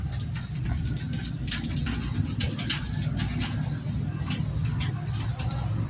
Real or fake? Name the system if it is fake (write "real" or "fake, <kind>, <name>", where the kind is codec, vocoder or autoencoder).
real